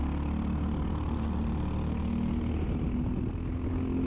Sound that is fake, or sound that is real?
real